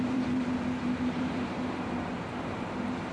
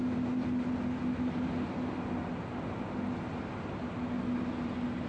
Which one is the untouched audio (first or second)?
second